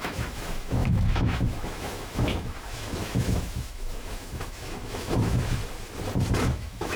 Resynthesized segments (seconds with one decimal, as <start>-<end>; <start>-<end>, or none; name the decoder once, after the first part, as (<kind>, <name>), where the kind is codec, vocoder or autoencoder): 0.0-5.6 (autoencoder, DAC-VAE); 6.4-7.0